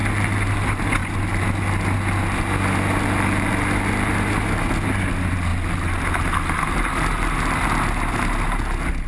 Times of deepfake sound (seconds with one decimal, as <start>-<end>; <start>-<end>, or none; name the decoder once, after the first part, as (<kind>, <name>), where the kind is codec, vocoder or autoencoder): none